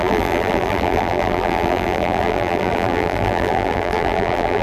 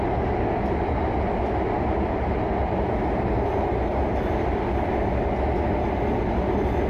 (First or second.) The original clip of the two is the second